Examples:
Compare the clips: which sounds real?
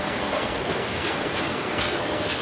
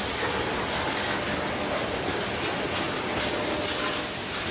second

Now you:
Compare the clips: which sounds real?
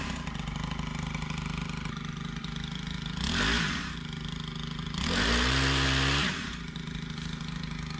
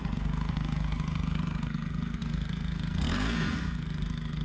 first